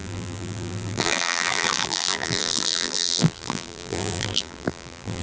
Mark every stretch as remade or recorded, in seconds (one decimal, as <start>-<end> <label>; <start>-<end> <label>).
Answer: 0.0-5.2 remade

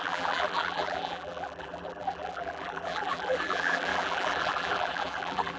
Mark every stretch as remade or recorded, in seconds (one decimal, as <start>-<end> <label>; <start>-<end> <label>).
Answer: 0.0-5.6 remade

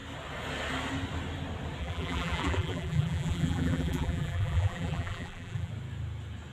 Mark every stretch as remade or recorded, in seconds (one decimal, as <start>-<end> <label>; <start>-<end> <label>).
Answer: 0.0-1.8 recorded; 1.8-5.7 remade; 5.7-6.5 recorded